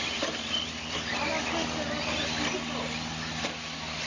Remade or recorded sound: recorded